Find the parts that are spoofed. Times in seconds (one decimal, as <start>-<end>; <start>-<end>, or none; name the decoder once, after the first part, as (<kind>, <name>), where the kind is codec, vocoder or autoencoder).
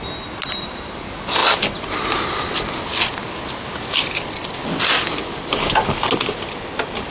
none